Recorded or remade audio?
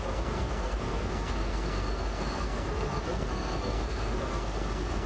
remade